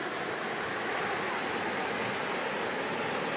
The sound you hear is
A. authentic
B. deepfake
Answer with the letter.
A